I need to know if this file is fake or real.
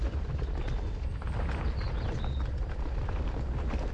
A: real